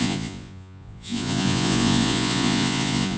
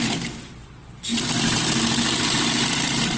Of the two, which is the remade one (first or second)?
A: first